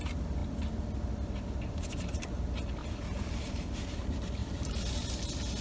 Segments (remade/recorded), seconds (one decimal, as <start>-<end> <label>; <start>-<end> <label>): 0.0-2.8 recorded; 2.8-3.4 remade; 3.4-4.4 recorded; 4.4-5.0 remade; 5.0-5.6 recorded